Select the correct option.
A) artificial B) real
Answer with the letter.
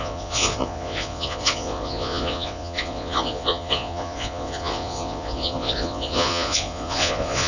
A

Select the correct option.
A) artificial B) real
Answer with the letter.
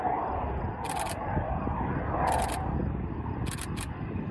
B